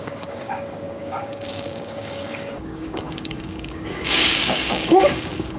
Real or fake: fake